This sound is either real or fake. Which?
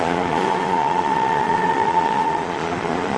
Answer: fake